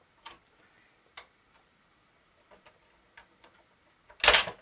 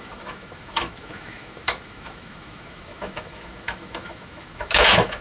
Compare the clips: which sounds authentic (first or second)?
first